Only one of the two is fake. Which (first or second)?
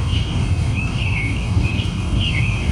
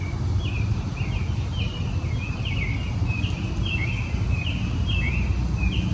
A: first